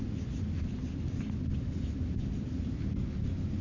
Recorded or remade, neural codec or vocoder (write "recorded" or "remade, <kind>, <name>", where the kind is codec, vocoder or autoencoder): recorded